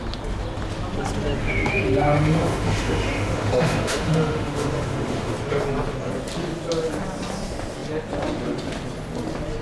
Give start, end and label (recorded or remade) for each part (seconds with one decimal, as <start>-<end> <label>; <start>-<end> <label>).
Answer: 0.0-1.4 recorded; 1.4-5.3 remade; 5.3-9.6 recorded